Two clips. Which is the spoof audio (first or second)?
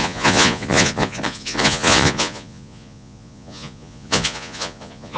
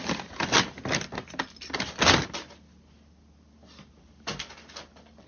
first